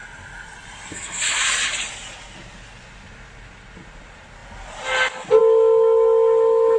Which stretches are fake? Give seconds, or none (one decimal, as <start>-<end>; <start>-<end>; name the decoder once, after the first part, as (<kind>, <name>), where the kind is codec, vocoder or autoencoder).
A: none